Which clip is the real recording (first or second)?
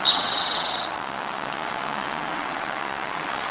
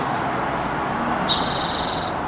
second